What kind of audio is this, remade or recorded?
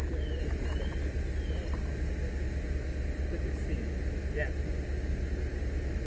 recorded